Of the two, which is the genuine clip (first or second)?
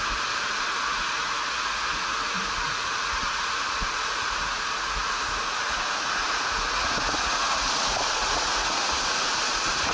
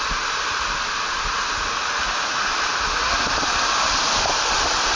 second